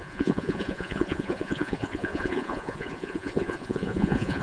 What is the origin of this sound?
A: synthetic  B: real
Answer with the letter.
A